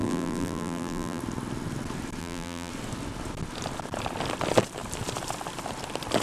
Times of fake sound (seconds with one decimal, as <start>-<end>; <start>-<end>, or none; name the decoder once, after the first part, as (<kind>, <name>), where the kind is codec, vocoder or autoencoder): 0.0-1.2 (vocoder, BigVGAN v2); 2.2-2.7